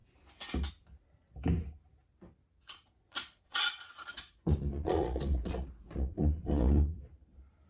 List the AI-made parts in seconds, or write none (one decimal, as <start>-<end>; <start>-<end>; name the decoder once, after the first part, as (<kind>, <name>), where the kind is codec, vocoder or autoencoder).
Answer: 2.4-7.0 (vocoder, Vocos)